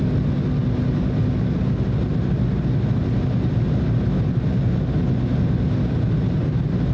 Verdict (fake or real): real